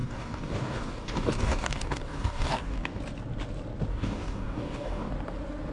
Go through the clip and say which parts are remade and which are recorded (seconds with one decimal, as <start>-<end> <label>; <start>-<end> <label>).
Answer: 0.0-3.0 remade; 3.0-3.9 recorded; 3.9-5.1 remade; 5.1-5.7 recorded